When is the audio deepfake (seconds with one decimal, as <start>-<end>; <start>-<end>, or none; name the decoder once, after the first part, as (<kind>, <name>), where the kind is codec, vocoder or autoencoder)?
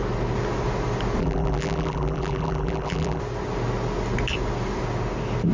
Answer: 1.2-3.2 (vocoder, BigVGAN v2)